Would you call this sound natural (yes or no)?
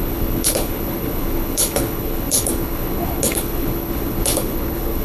no